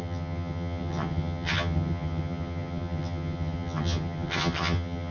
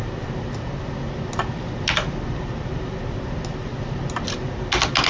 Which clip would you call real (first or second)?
second